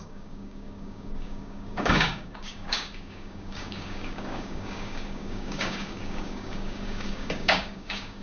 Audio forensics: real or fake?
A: fake